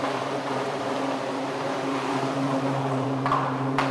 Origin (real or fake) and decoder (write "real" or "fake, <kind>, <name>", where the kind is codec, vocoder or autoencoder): fake, vocoder, BigVGAN v2